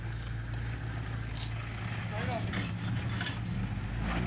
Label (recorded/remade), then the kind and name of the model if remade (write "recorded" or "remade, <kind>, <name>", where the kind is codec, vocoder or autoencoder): recorded